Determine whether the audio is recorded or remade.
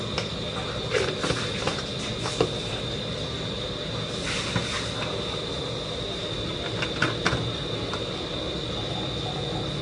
recorded